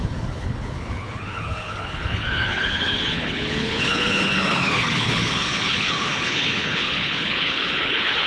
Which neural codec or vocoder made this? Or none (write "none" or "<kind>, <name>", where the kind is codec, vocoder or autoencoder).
codec, HILCodec